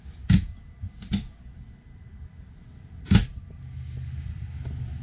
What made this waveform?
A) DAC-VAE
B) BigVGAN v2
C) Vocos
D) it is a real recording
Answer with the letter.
B